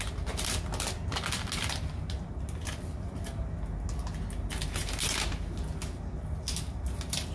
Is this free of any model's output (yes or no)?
yes